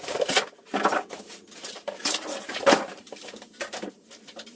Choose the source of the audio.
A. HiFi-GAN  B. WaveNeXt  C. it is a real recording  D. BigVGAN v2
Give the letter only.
D